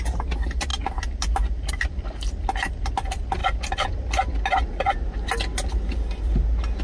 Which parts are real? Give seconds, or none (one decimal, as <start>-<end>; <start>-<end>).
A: 0.0-6.8